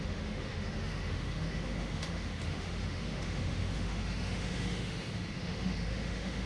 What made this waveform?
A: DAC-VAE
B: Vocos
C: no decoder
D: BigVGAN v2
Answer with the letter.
A